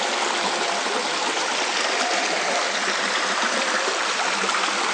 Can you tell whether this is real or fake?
real